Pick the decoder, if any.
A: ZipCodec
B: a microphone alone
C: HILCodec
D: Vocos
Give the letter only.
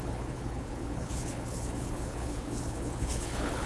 C